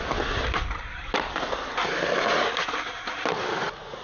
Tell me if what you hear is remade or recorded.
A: recorded